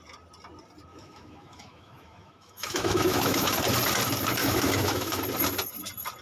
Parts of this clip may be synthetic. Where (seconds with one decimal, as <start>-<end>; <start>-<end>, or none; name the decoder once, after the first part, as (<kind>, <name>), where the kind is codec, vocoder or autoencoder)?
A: 0.9-3.6 (autoencoder, DAC-VAE); 4.4-5.2